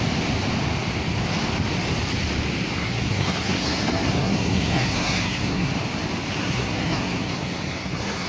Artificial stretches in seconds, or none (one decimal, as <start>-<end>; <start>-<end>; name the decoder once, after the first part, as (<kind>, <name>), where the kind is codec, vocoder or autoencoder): 2.8-5.7 (codec, SNAC); 6.4-8.3